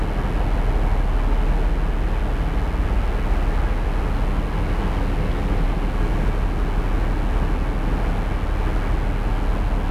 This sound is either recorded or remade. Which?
recorded